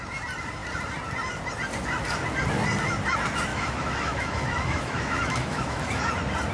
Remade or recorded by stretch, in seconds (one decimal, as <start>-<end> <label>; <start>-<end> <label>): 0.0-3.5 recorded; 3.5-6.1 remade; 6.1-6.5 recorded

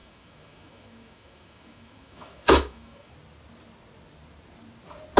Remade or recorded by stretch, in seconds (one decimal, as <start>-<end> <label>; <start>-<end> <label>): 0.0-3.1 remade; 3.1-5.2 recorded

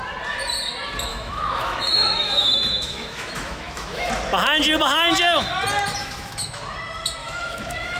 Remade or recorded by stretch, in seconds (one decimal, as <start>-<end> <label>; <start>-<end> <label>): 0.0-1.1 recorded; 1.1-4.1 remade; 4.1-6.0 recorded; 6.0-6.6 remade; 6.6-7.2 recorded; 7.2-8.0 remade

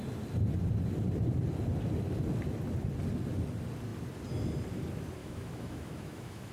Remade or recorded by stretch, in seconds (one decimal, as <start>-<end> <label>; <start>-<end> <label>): 0.0-5.2 recorded; 5.2-6.5 remade